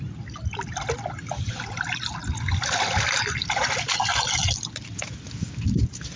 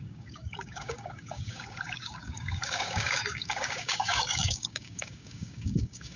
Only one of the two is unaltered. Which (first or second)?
first